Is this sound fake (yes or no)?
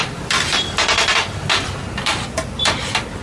no